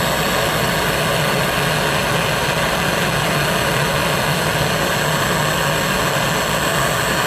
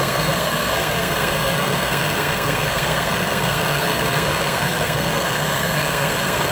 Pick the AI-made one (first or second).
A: second